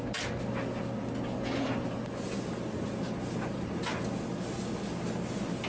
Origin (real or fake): real